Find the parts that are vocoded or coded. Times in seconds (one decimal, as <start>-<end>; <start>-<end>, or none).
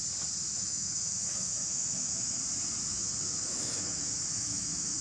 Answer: 0.5-2.4; 2.9-5.0